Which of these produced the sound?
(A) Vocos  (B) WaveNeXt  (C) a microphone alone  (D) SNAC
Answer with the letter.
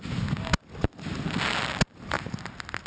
C